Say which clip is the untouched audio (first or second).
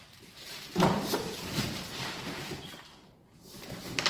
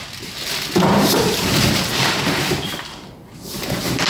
second